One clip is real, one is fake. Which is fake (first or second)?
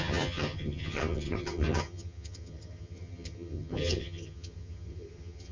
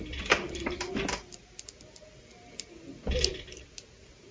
first